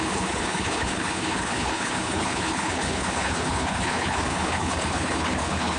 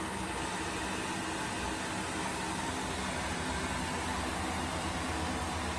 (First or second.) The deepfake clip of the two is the first